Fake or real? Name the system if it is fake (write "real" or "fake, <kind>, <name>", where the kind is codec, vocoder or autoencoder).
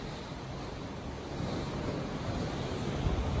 real